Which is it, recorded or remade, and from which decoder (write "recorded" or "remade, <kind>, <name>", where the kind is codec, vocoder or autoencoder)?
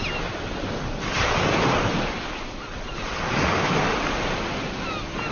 recorded